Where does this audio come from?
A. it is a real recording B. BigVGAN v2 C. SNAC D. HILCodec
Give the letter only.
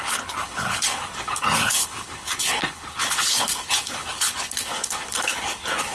D